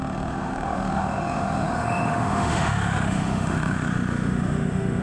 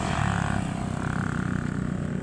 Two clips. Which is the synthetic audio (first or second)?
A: first